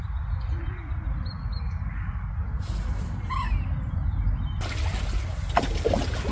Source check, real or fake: real